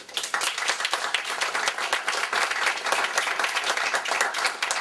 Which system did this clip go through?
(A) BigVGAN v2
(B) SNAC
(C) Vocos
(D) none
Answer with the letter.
A